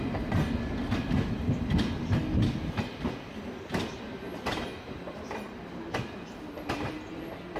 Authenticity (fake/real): real